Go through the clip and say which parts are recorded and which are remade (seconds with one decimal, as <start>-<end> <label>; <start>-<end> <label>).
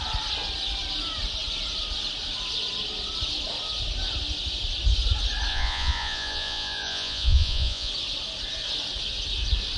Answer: 0.0-5.5 recorded; 5.5-7.9 remade; 7.9-9.8 recorded